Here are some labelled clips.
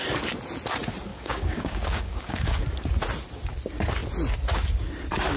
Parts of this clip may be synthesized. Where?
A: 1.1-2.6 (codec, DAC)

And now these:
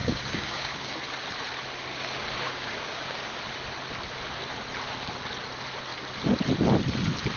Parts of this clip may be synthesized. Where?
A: 0.0-1.0 (codec, DAC); 1.9-3.4

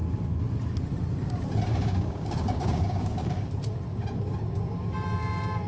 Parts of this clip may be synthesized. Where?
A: 1.7-3.5 (codec, DAC)

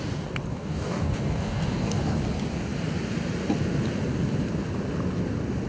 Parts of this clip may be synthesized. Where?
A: 0.5-2.2 (codec, DAC)

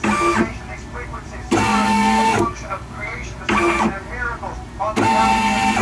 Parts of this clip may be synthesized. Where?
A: 1.7-3.4 (codec, DAC)